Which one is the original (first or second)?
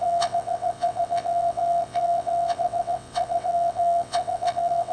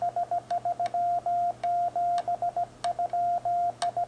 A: second